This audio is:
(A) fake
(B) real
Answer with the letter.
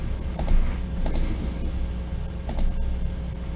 B